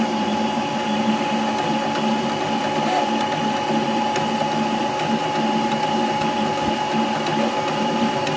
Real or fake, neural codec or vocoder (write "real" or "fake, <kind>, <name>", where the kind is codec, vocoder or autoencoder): real